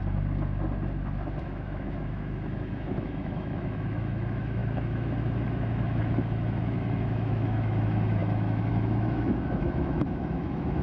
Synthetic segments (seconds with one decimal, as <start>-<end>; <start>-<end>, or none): 1.4-10.8